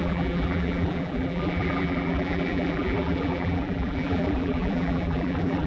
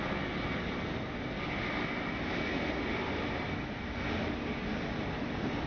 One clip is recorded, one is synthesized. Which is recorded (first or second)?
second